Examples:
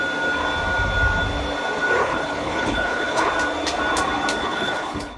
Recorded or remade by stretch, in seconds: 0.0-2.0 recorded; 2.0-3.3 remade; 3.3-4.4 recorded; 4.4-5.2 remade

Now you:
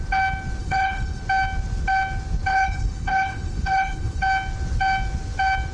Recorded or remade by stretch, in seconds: 0.0-0.6 recorded; 0.6-1.2 remade; 1.2-2.5 recorded; 2.5-4.2 remade; 4.2-5.7 recorded

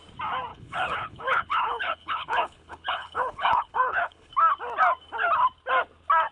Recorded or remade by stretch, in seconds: 0.0-0.5 recorded; 0.5-4.3 remade; 4.3-6.3 recorded

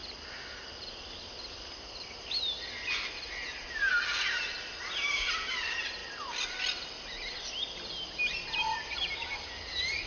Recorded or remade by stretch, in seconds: 0.0-10.1 recorded

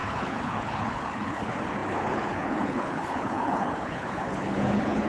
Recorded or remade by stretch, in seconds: 0.0-5.1 remade

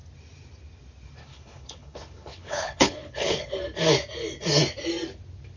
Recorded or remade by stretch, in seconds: 0.0-1.2 recorded; 1.2-3.6 remade; 3.6-5.6 recorded

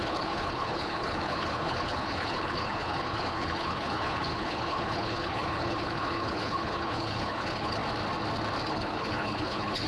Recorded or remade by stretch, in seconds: 0.0-7.8 remade; 7.8-8.7 recorded; 8.7-9.9 remade